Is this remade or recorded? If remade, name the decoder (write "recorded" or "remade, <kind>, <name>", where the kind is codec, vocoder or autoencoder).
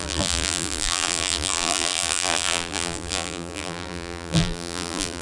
remade, vocoder, BigVGAN v2